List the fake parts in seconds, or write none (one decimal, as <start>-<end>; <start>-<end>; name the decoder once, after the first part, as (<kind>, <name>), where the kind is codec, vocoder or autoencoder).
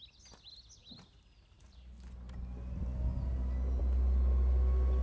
none